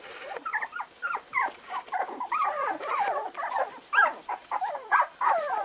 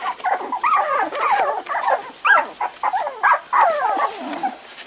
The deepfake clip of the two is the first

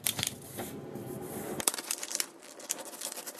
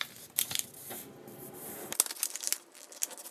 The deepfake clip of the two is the first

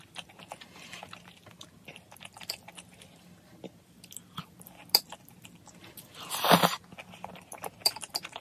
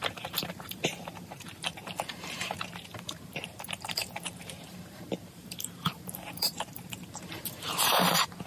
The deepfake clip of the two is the second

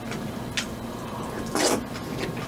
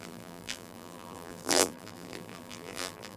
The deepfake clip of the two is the second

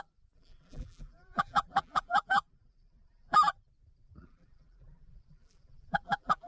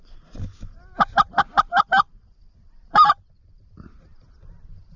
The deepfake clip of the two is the first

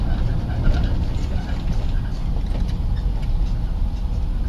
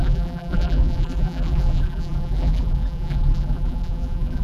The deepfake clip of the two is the second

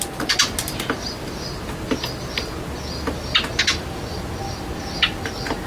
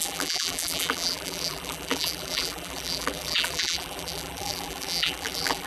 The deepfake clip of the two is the second